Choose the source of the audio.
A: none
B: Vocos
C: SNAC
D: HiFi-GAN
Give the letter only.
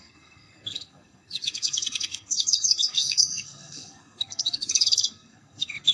C